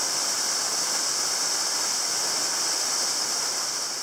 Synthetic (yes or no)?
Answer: no